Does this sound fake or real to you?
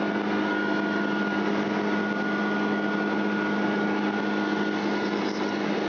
real